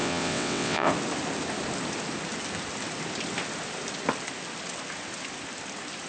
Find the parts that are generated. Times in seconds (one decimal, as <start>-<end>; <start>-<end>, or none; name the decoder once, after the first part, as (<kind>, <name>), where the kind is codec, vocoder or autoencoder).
0.0-0.9 (vocoder, WaveNeXt)